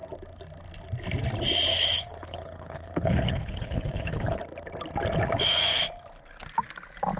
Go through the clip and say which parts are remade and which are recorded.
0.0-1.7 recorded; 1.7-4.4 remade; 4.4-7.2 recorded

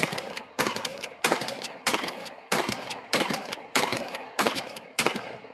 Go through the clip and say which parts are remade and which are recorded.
0.0-5.5 remade

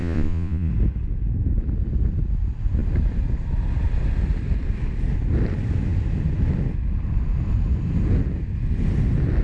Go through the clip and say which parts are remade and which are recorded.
0.0-0.7 remade; 0.7-9.4 recorded

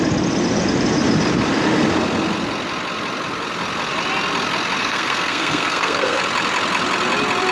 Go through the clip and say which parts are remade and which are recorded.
0.0-4.8 recorded; 4.8-6.2 remade; 6.2-7.5 recorded

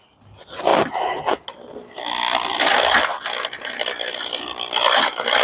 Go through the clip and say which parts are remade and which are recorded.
0.0-5.4 recorded

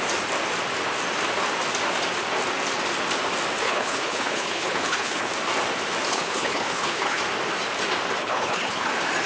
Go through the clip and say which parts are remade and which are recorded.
0.0-3.6 recorded; 3.6-5.3 remade; 5.3-6.1 recorded; 6.1-7.2 remade; 7.2-8.2 recorded; 8.2-8.9 remade; 8.9-9.3 recorded